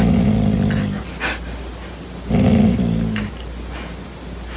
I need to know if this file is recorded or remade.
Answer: recorded